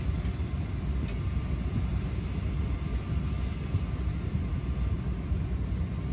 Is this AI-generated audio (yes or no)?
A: no